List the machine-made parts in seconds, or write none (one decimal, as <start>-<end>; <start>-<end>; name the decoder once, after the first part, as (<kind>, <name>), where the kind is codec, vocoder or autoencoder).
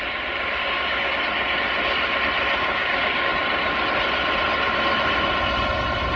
0.6-1.2 (codec, DAC); 2.6-3.3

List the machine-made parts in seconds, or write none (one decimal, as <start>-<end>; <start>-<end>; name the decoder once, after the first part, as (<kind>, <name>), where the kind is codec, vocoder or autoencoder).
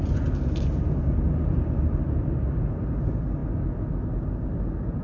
none